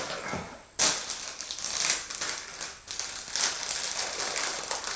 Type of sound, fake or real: real